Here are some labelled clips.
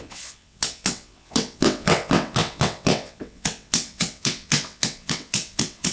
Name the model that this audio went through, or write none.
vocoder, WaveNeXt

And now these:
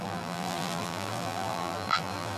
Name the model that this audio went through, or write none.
vocoder, BigVGAN v2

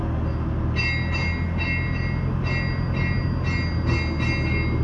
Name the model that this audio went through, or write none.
none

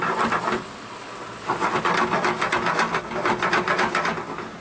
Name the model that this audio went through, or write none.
none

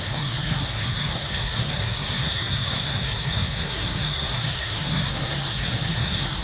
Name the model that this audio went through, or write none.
codec, SNAC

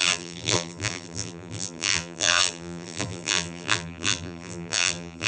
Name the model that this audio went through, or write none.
vocoder, BigVGAN v2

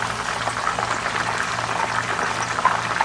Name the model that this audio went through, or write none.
none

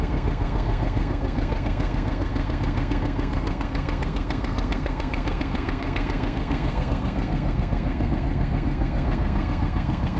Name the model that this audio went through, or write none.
codec, SNAC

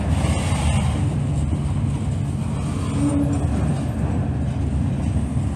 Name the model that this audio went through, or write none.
none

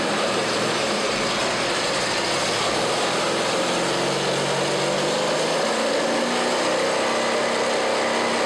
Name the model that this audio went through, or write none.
none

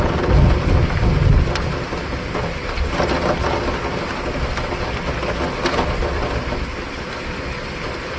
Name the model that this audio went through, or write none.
none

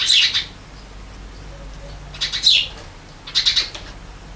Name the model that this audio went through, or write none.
none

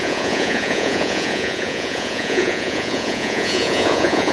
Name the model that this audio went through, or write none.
vocoder, Vocos